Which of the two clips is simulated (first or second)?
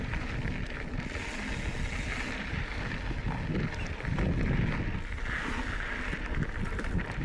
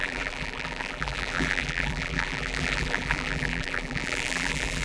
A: second